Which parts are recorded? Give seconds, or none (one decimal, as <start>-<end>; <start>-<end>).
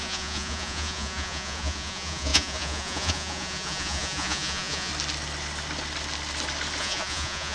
4.9-6.8